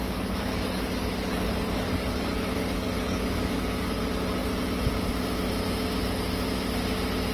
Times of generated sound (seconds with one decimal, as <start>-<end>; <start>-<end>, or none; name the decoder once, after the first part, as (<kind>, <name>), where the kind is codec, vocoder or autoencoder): 0.0-4.0 (codec, DAC)